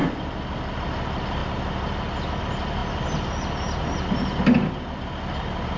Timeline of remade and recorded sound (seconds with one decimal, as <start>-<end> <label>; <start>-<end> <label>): 0.0-5.8 recorded